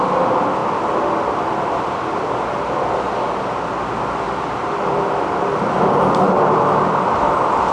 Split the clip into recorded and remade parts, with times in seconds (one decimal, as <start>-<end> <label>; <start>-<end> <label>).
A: 0.0-4.6 recorded; 4.6-7.2 remade; 7.2-7.7 recorded